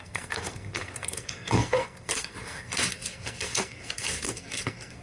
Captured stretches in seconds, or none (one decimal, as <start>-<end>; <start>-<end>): none